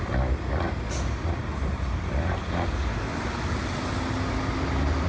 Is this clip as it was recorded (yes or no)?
yes